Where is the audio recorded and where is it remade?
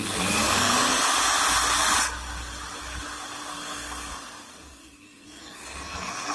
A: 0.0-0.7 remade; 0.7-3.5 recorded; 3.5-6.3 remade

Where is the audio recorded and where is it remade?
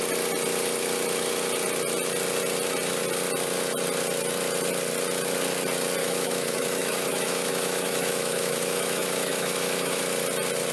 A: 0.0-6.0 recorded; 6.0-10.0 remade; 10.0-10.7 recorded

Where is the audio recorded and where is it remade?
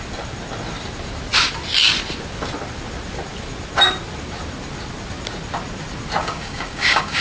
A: 0.0-6.2 recorded; 6.2-7.2 remade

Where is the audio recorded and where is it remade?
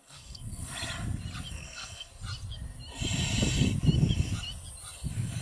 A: 0.0-0.7 remade; 0.7-1.5 recorded; 1.5-2.1 remade; 2.1-5.4 recorded